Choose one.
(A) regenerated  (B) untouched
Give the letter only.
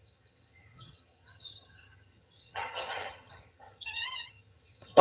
A